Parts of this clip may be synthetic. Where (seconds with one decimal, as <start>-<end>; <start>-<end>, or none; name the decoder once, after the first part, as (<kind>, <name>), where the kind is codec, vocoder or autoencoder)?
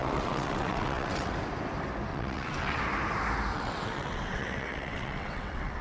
0.0-1.3 (vocoder, WaveNeXt); 2.1-2.8; 3.5-5.8